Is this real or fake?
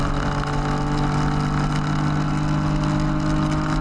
real